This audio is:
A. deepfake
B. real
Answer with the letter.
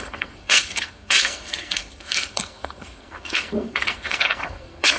A